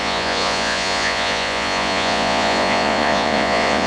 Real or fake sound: fake